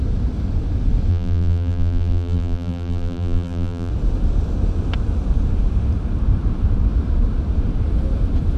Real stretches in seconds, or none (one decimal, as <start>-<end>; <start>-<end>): 0.0-1.1; 3.9-8.6